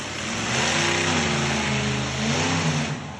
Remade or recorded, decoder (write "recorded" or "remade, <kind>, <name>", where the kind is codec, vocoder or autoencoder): recorded